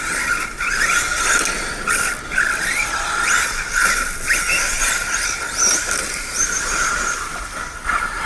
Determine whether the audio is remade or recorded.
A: recorded